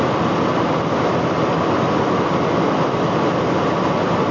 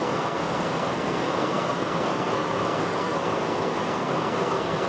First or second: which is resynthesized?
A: second